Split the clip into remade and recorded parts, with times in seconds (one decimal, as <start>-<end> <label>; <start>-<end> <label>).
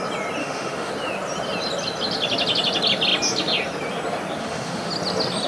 0.0-0.4 recorded; 0.4-0.9 remade; 0.9-4.4 recorded; 4.4-4.9 remade; 4.9-5.5 recorded